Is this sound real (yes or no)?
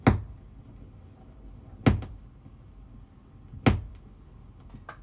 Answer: yes